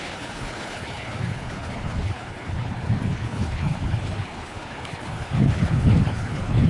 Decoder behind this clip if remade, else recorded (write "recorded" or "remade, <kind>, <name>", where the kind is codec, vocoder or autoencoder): remade, codec, HILCodec